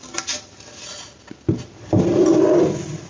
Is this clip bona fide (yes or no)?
yes